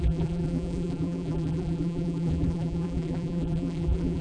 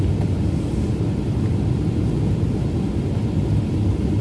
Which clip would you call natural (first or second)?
second